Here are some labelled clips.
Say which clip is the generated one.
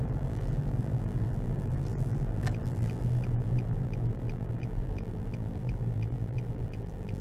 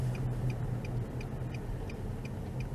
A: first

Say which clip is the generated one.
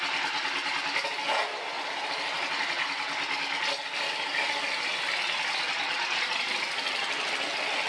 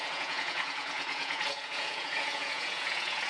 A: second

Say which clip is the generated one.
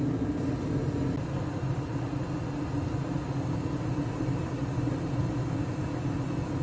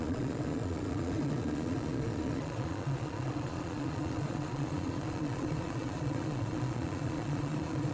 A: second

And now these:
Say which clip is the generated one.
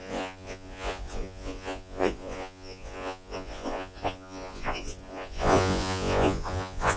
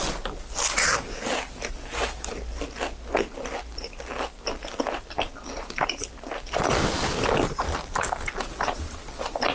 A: first